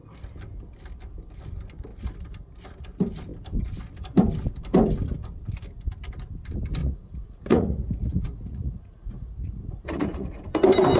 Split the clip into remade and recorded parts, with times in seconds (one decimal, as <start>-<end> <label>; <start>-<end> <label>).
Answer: 0.0-6.8 recorded; 6.8-10.4 remade; 10.4-11.0 recorded

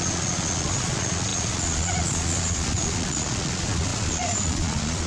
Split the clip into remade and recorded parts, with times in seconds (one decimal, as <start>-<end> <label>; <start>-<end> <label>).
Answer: 0.0-5.1 remade

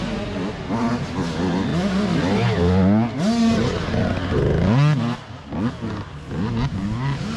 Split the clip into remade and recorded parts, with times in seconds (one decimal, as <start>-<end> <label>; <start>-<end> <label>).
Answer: 0.0-7.4 recorded

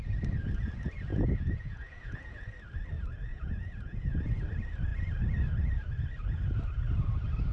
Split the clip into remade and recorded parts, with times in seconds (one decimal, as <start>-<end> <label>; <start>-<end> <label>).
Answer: 0.0-1.1 recorded; 1.1-2.5 remade; 2.5-3.3 recorded; 3.3-4.2 remade; 4.2-7.5 recorded

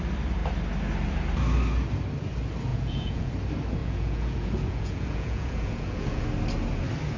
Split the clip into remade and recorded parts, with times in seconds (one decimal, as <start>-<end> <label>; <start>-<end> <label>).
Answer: 0.0-2.7 recorded; 2.7-3.3 remade; 3.3-3.8 recorded; 3.8-6.2 remade; 6.2-7.2 recorded

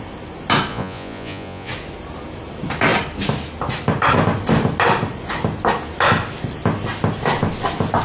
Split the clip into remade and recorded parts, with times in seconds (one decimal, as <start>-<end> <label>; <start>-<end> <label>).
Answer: 0.0-0.7 recorded; 0.7-1.7 remade; 1.7-8.0 recorded